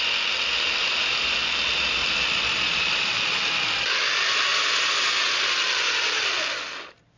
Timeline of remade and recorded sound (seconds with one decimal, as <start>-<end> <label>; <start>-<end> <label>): 0.0-2.0 recorded; 2.0-4.0 remade; 4.0-7.2 recorded